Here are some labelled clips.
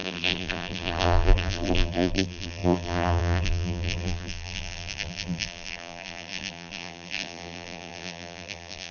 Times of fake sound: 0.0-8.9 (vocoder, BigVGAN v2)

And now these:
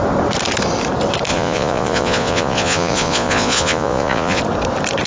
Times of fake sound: 1.3-4.4 (vocoder, Vocos)

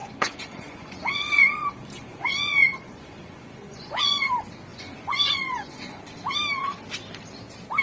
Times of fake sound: 0.0-4.3 (vocoder, Vocos); 4.7-6.0

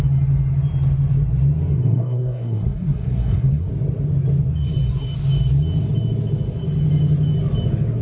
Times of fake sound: 1.7-3.7 (codec, SNAC)

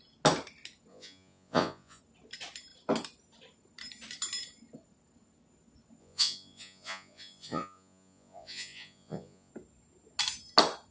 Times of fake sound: 0.9-2.0 (vocoder, Vocos); 6.0-9.5

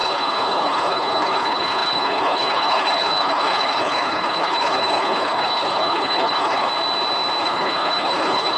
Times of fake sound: 0.0-6.7 (codec, HILCodec); 7.4-8.6

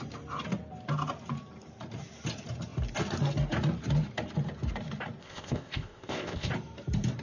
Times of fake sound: 5.2-6.5 (codec, ZipCodec)

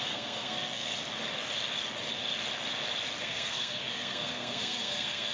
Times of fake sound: 0.0-0.9 (codec, SNAC); 3.2-5.3